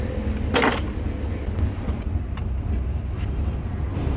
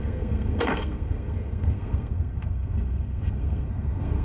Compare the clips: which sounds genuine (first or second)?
first